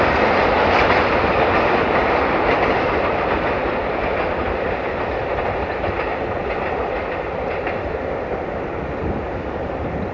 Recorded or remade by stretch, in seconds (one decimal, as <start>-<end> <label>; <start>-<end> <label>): 0.0-10.1 recorded